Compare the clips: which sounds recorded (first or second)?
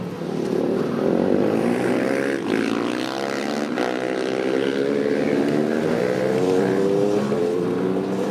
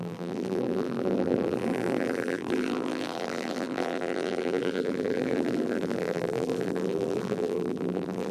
first